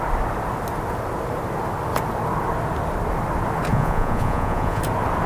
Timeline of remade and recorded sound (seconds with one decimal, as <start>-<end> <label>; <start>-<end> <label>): 0.0-3.7 recorded; 3.7-4.8 remade; 4.8-5.3 recorded